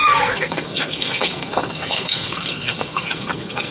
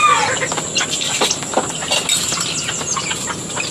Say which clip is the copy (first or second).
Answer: first